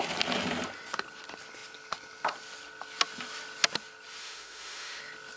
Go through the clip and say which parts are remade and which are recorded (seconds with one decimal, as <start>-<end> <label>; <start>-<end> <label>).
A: 0.0-4.2 recorded; 4.2-5.0 remade; 5.0-5.4 recorded